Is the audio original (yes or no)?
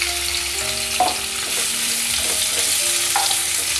yes